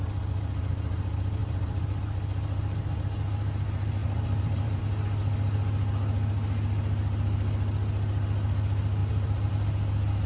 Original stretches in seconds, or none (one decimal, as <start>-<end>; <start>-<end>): 0.0-1.4; 2.0-4.0; 4.8-9.0; 9.5-10.3

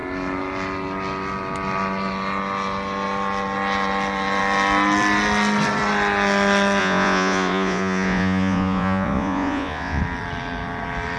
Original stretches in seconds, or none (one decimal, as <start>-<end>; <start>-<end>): 0.0-6.8; 10.0-11.2

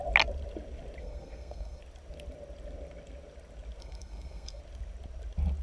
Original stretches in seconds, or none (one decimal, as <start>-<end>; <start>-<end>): 0.0-1.0; 1.8-3.8; 4.6-5.6

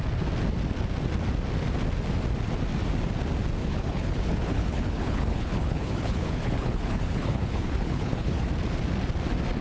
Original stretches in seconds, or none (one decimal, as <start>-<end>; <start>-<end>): 0.0-3.6; 8.5-9.6